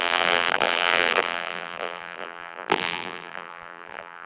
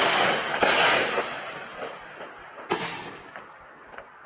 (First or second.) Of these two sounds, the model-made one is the first